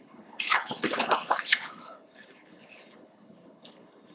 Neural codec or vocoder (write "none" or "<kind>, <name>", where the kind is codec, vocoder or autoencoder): codec, HILCodec